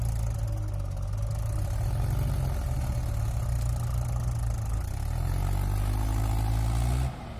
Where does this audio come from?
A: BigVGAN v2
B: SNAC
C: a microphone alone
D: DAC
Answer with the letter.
C